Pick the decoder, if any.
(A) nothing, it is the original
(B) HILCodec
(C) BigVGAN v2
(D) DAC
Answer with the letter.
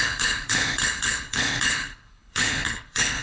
B